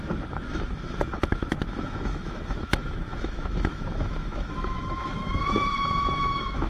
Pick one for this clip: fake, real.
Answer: fake